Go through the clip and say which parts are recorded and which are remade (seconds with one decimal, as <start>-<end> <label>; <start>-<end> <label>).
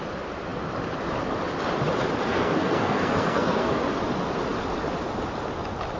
0.0-2.3 recorded; 2.3-3.8 remade; 3.8-6.0 recorded